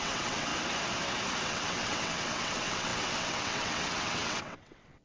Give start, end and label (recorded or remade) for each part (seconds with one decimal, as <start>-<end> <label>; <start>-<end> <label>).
0.0-0.5 remade; 0.5-1.4 recorded; 1.4-5.0 remade